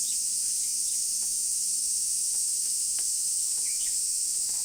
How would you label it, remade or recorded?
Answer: remade